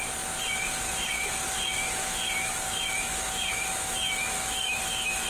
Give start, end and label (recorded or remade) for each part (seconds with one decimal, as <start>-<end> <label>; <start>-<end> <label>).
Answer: 0.0-2.0 recorded; 2.0-5.3 remade